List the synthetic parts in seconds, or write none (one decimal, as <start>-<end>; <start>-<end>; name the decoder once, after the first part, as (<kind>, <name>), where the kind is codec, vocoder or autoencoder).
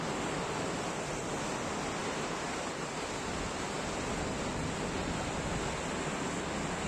none